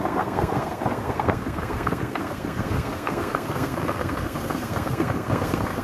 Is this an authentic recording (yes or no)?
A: no